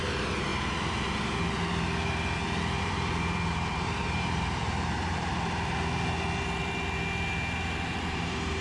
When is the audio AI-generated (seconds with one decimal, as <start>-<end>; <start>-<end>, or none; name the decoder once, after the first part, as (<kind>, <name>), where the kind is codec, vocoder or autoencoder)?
0.0-0.5 (vocoder, BigVGAN v2); 2.8-5.3; 7.9-8.6